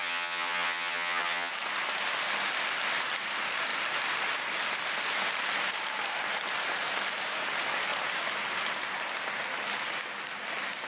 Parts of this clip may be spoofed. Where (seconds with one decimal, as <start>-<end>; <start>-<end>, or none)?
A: 0.0-1.5